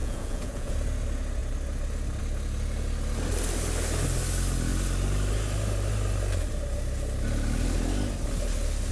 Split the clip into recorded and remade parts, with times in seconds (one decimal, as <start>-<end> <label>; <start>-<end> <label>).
0.0-0.7 remade; 0.7-8.9 recorded